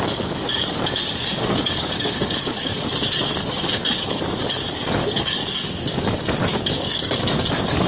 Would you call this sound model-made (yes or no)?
yes